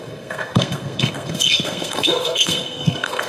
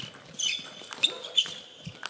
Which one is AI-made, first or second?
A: first